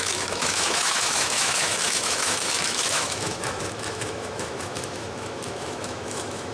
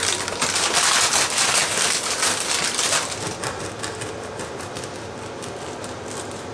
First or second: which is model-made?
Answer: first